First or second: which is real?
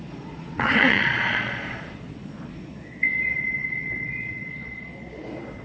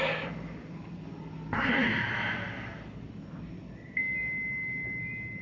second